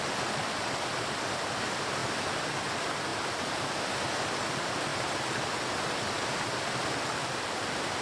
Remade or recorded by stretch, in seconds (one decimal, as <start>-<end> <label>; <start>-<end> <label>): 0.0-8.0 recorded